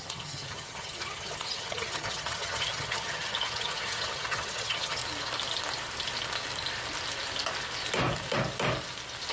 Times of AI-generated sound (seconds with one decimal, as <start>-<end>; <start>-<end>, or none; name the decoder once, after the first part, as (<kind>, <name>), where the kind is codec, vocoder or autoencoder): 0.0-5.0 (vocoder, HiFi-GAN)